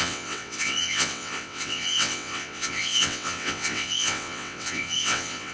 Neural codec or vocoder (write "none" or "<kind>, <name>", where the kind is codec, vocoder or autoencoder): vocoder, WaveNeXt